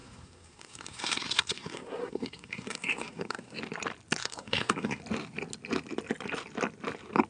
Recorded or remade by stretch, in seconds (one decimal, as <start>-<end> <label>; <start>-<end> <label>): 0.0-3.6 remade; 3.6-4.2 recorded; 4.2-5.0 remade; 5.0-7.3 recorded